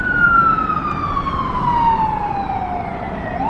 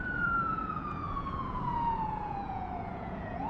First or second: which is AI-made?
second